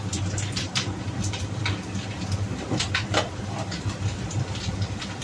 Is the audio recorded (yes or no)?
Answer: no